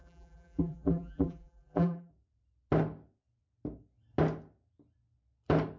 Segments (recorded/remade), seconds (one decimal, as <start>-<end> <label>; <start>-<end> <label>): 0.0-2.1 remade; 2.1-5.8 recorded

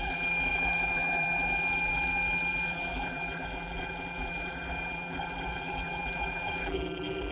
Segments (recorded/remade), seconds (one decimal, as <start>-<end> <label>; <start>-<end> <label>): 0.0-7.3 remade

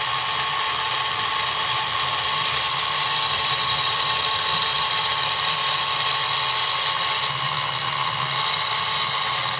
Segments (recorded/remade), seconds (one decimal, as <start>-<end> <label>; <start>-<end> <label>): 0.0-1.6 recorded; 1.6-5.8 remade; 5.8-9.6 recorded

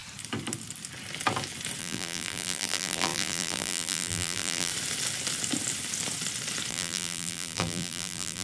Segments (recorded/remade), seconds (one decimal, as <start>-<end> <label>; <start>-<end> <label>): 0.0-1.8 recorded; 1.8-4.7 remade; 4.7-6.7 recorded; 6.7-8.4 remade

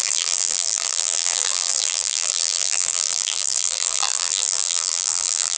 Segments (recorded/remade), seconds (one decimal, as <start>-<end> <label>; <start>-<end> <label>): 0.0-5.6 remade

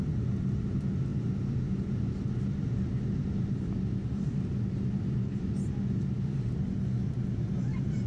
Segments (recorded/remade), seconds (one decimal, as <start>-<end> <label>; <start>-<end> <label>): 0.0-8.1 recorded